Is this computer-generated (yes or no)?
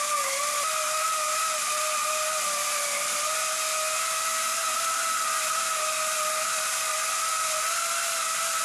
no